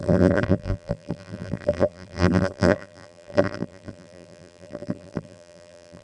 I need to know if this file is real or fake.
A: fake